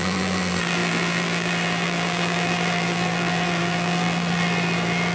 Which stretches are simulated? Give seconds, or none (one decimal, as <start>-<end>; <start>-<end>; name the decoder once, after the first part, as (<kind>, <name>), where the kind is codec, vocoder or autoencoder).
0.0-5.1 (vocoder, BigVGAN v2)